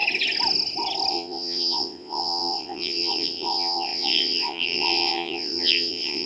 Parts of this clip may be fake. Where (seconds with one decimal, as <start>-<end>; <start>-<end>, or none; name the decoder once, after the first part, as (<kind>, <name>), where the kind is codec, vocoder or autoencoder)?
1.1-6.3 (vocoder, WaveNeXt)